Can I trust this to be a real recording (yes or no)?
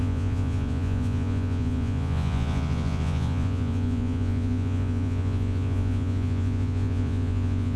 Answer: no